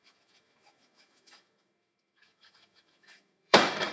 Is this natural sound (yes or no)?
no